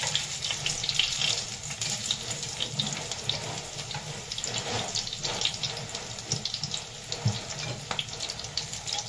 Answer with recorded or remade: recorded